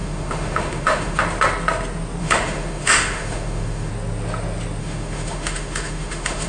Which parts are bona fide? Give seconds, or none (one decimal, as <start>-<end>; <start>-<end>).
1.2-2.2; 3.9-4.8